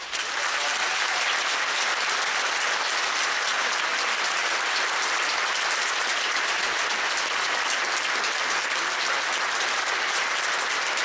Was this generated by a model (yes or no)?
no